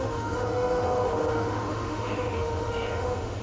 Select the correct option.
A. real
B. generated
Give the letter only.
B